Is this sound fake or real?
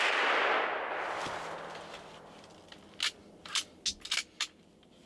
real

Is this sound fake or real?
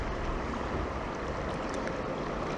real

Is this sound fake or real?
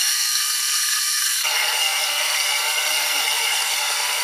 fake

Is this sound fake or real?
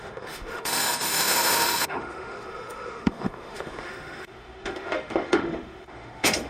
fake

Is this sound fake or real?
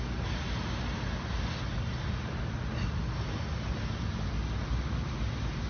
real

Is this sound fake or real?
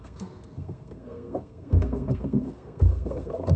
fake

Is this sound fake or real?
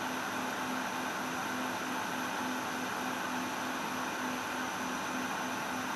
real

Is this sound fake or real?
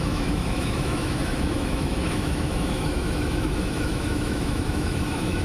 fake